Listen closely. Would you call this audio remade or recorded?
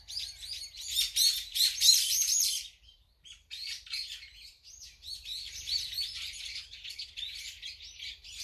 remade